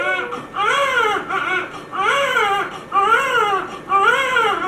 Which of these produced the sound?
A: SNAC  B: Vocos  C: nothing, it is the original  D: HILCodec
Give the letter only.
C